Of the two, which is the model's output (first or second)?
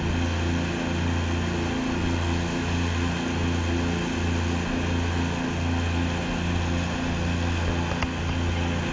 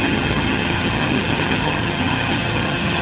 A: second